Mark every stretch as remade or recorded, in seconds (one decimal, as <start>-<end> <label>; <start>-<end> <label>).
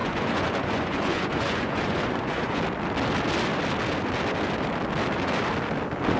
0.0-2.6 remade; 2.6-6.2 recorded